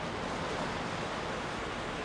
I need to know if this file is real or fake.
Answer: real